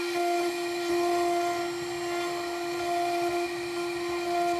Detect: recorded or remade recorded